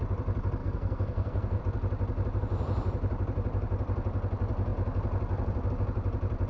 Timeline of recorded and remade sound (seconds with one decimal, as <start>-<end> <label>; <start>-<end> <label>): 0.0-0.6 recorded; 0.6-1.6 remade; 1.6-6.5 recorded